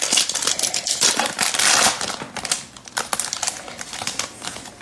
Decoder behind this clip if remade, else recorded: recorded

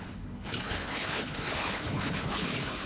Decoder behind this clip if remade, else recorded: remade, codec, HILCodec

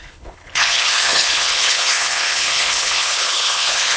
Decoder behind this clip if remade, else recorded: remade, codec, HILCodec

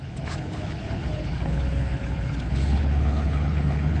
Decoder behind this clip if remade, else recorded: remade, codec, HILCodec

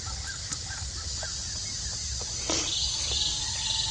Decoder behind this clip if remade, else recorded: recorded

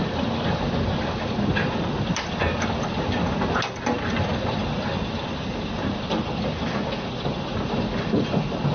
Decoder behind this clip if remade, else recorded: recorded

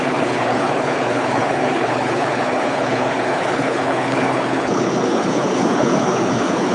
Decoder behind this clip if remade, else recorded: remade, codec, HILCodec